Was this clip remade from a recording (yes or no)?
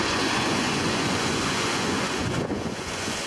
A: yes